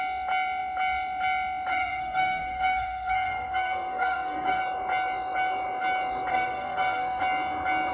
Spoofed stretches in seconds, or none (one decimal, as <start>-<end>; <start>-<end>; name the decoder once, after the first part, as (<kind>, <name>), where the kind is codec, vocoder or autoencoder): 1.7-4.6 (codec, SNAC); 6.3-7.2